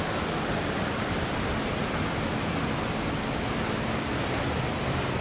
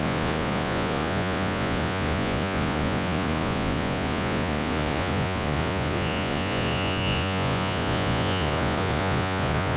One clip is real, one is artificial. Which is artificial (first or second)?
second